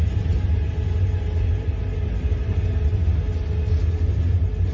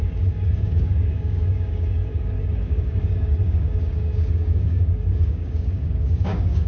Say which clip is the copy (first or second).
second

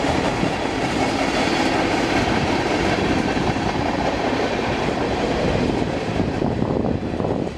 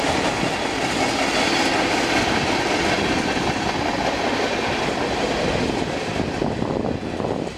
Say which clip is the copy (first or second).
first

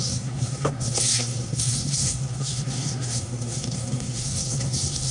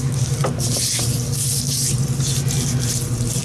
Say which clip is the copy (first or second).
first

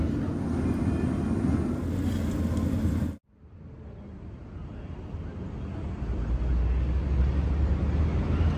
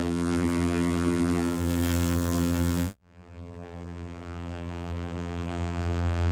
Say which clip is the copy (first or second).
second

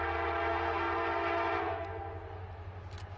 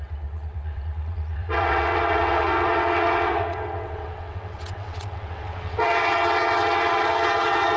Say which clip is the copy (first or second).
second